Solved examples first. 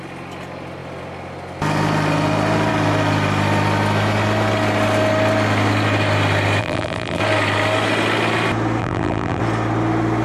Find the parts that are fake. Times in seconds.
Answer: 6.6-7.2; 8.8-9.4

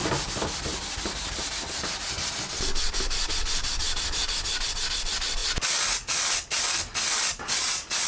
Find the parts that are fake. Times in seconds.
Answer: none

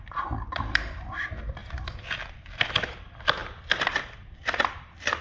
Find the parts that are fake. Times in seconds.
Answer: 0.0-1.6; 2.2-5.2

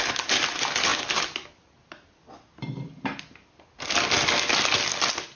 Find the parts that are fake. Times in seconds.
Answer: none

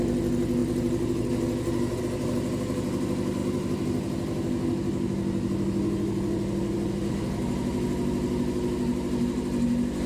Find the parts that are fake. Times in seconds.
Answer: none

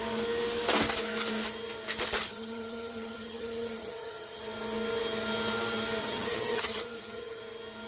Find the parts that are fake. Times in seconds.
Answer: 2.2-4.4; 6.0-7.4

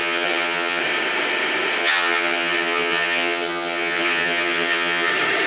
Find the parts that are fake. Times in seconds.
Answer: 0.0-0.8; 1.8-5.1